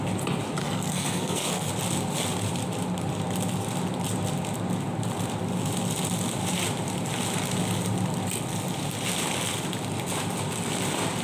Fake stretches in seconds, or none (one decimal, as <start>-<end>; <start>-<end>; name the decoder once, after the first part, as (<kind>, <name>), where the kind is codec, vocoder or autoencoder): 0.6-1.7 (codec, SNAC)